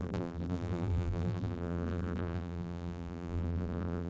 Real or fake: fake